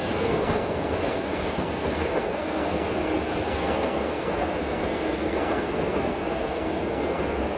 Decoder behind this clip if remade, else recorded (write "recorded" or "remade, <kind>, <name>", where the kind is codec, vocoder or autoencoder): remade, codec, SNAC